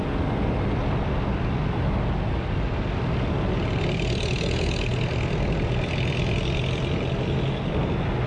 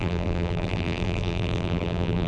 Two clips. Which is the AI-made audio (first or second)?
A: second